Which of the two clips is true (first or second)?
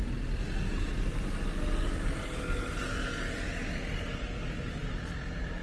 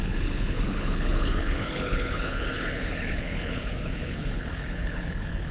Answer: first